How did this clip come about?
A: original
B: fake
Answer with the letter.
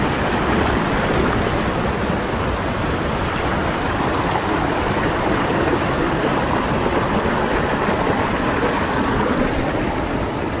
A